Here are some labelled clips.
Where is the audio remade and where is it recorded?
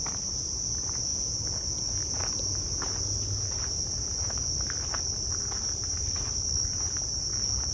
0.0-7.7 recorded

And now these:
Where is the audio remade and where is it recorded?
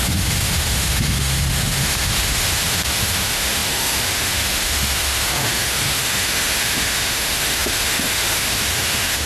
0.0-9.3 remade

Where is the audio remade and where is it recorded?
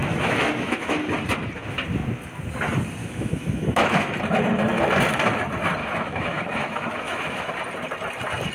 0.0-1.0 remade; 1.0-3.0 recorded; 3.0-4.1 remade; 4.1-5.8 recorded; 5.8-7.5 remade; 7.5-8.5 recorded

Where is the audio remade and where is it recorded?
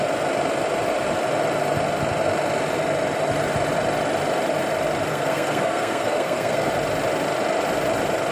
0.0-5.1 recorded; 5.1-6.7 remade; 6.7-8.3 recorded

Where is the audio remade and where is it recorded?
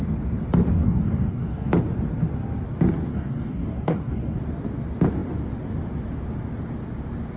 0.0-0.7 recorded; 0.7-1.7 remade; 1.7-3.1 recorded; 3.1-4.4 remade; 4.4-7.4 recorded